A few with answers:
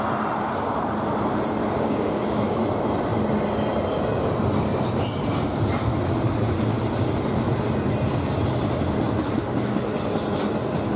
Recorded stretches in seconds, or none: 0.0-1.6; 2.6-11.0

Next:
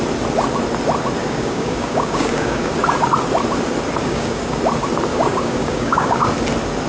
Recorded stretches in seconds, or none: 0.0-1.2; 2.7-4.0; 4.6-5.1; 6.3-6.9

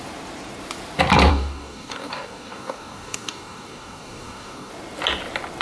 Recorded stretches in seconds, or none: 0.0-1.3; 4.7-5.6

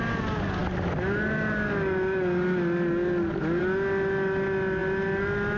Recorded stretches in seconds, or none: 0.0-5.6

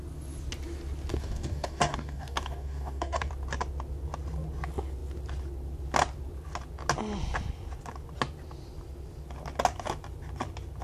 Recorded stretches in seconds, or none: 0.0-1.1; 3.3-10.8

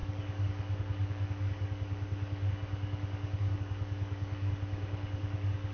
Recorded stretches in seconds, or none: none

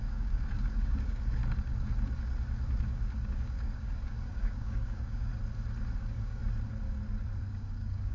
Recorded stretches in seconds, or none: 1.4-2.8; 5.3-6.0; 6.4-7.4